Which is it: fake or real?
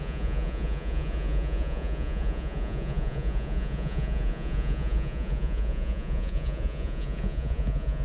fake